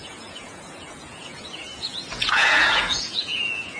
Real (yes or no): no